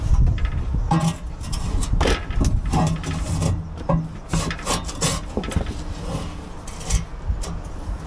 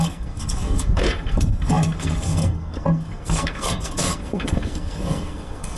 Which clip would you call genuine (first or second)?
first